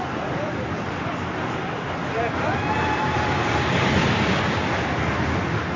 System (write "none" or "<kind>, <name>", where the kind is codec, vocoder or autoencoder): none